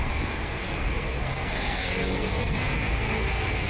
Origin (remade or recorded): remade